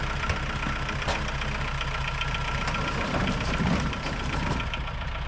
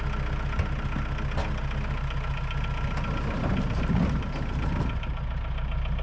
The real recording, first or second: second